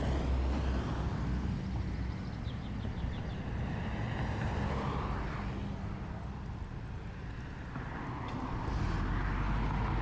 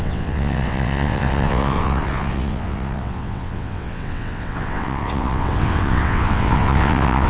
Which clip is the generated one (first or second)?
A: second